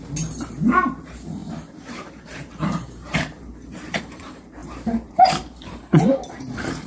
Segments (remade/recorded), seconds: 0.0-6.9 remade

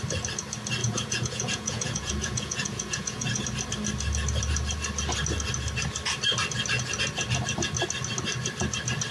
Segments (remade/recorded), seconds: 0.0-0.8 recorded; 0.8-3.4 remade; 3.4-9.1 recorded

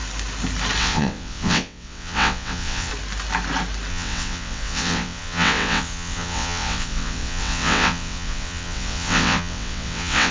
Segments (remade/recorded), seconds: 0.0-0.8 recorded; 0.8-2.9 remade; 2.9-3.9 recorded; 3.9-10.3 remade